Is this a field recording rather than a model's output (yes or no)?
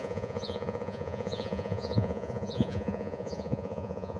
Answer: no